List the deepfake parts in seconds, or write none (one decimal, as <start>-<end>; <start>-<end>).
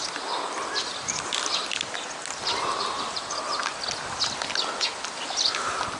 none